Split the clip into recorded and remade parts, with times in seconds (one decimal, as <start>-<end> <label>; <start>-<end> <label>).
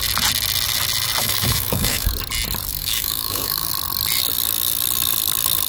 0.0-1.2 recorded; 1.2-2.1 remade; 2.1-2.8 recorded; 2.8-3.7 remade; 3.7-5.7 recorded